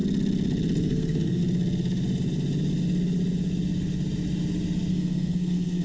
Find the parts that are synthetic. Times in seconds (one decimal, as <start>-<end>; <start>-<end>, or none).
0.8-1.4; 4.9-5.8